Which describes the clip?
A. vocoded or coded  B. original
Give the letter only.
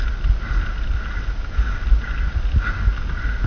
B